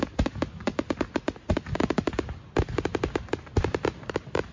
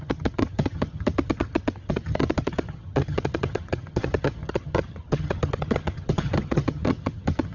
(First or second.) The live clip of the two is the first